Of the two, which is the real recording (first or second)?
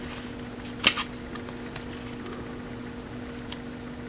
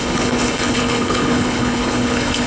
first